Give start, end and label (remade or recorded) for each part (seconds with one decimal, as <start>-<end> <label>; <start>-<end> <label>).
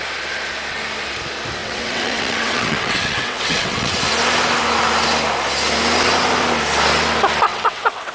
0.0-1.6 recorded; 1.6-4.0 remade; 4.0-7.5 recorded; 7.5-8.1 remade